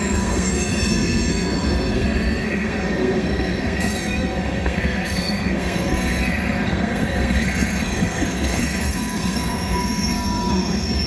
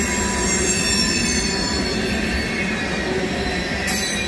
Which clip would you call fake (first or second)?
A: first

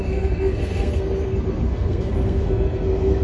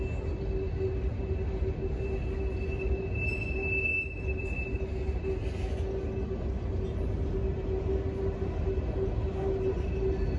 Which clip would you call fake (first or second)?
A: first